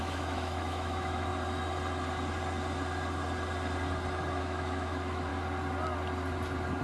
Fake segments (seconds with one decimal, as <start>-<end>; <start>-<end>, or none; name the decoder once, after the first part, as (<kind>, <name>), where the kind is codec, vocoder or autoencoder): 0.0-1.3 (autoencoder, DAC-VAE); 4.4-5.3